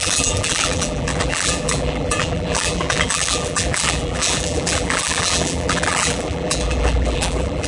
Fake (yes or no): yes